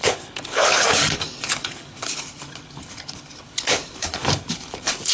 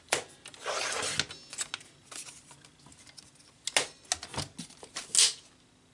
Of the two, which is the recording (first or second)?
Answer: second